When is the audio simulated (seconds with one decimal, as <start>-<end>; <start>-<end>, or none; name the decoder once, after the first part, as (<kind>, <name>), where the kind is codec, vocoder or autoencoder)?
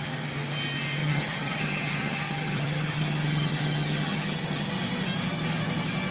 1.0-4.7 (vocoder, HiFi-GAN)